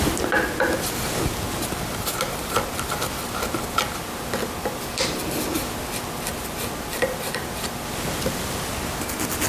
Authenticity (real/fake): real